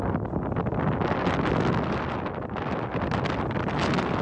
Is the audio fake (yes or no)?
no